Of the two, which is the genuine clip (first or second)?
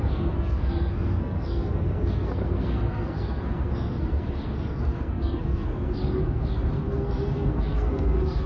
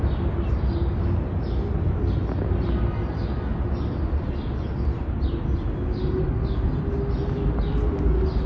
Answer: second